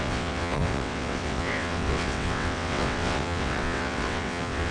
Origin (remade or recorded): remade